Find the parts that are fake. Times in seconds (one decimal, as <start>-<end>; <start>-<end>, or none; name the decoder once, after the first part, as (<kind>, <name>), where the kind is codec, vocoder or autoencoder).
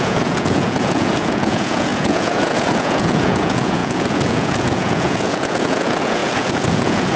0.0-7.2 (vocoder, Vocos)